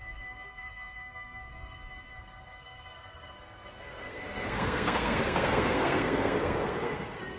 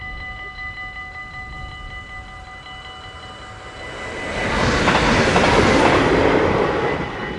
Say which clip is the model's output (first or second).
first